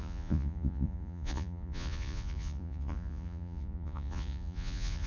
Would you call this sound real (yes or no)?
no